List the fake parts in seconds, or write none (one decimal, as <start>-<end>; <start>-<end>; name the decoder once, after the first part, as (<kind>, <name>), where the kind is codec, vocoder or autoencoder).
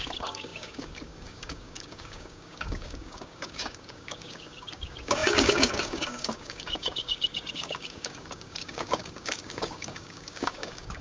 0.0-11.0 (codec, DAC)